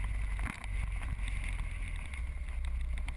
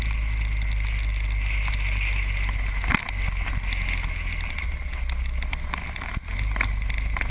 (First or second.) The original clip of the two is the second